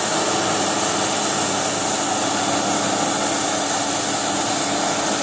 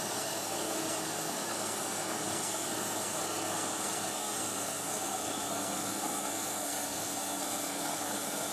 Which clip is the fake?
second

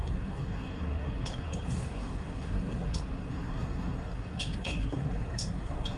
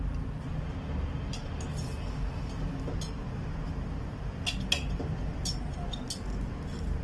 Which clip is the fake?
first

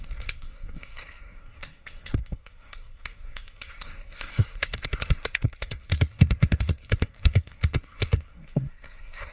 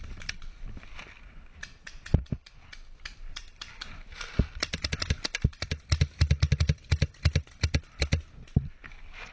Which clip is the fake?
first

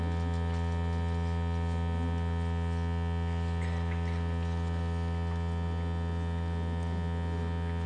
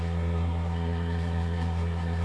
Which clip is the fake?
second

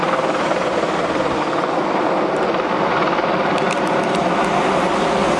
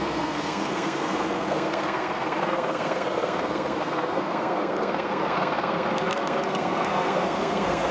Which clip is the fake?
second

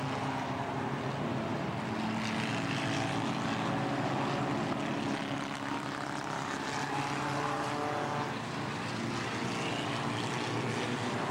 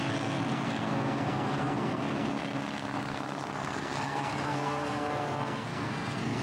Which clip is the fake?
second